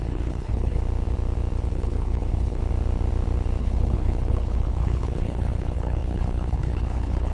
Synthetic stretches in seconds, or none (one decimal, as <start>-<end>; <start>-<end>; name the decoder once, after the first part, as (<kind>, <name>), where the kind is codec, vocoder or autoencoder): 0.0-0.8 (codec, HILCodec); 1.7-2.6; 3.6-7.3